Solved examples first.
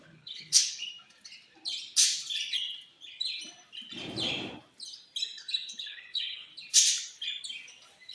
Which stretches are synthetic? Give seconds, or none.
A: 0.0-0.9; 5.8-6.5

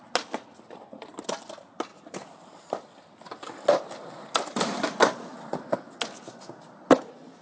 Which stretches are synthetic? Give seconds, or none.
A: none